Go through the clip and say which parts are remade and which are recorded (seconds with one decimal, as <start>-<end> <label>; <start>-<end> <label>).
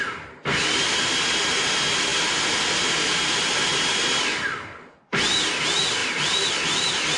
0.0-7.2 recorded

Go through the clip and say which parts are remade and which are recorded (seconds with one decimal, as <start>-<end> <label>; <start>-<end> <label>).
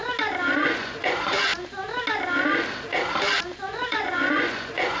0.0-0.5 recorded; 0.5-1.5 remade; 1.5-3.6 recorded; 3.6-5.0 remade